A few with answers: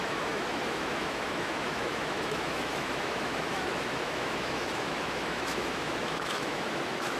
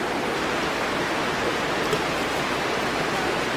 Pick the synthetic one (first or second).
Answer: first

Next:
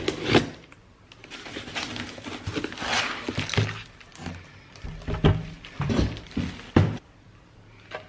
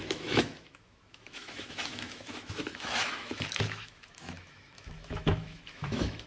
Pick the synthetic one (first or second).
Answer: second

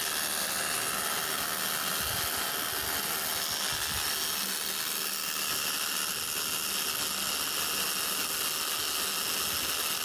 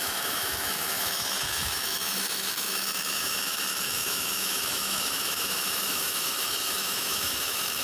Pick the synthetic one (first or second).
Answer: second